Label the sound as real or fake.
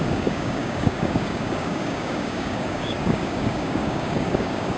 fake